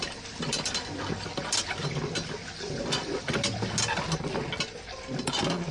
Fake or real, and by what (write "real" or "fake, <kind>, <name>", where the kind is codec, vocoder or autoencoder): real